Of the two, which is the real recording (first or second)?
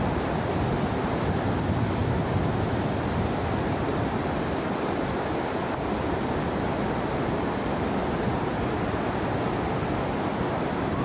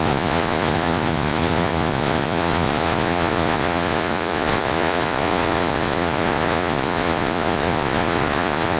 first